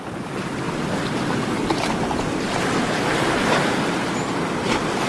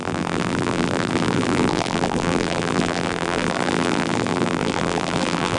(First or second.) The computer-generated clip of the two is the second